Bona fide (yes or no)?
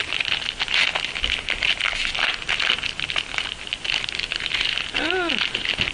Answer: yes